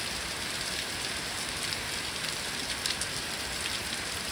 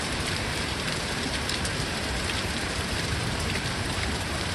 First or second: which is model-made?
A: second